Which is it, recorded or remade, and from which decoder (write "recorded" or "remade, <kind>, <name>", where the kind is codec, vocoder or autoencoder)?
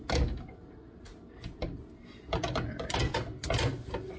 recorded